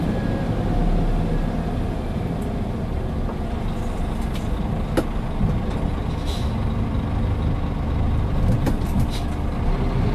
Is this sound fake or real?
real